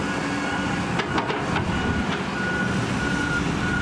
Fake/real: real